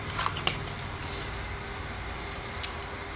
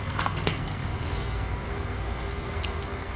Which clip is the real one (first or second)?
first